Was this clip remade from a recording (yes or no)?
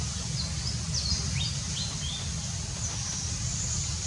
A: no